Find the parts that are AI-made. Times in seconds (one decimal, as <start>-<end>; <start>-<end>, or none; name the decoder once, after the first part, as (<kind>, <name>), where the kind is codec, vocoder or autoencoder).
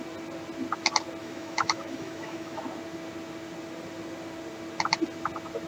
1.2-2.6 (autoencoder, DAC-VAE)